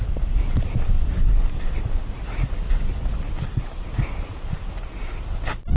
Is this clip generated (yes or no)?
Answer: no